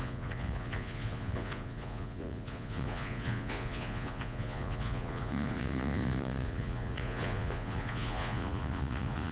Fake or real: fake